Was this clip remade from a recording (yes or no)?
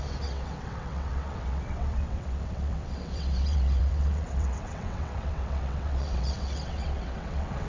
yes